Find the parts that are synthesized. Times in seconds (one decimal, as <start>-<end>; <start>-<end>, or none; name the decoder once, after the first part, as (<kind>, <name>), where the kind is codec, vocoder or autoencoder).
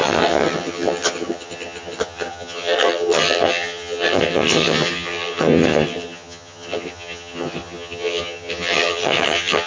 0.0-9.7 (vocoder, HiFi-GAN)